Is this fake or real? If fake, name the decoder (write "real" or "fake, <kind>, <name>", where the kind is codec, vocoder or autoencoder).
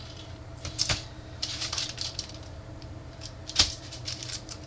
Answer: fake, vocoder, BigVGAN v2